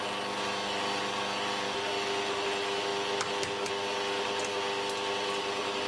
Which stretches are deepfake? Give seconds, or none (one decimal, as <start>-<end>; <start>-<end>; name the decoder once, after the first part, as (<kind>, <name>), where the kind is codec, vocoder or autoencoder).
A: none